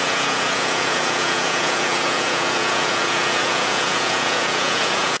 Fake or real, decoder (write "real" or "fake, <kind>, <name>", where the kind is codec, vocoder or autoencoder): fake, vocoder, Vocos